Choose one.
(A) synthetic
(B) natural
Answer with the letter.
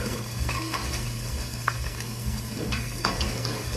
A